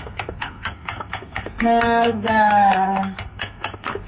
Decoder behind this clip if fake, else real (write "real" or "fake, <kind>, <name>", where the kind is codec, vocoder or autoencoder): fake, codec, SNAC